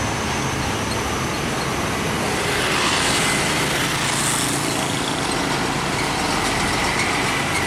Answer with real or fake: real